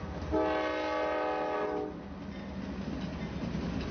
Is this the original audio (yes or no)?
yes